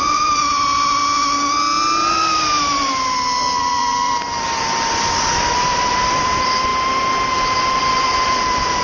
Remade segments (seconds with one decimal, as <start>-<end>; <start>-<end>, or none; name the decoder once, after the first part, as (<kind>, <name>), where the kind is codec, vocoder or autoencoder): 0.0-1.0 (vocoder, BigVGAN v2); 3.6-6.7; 7.8-8.8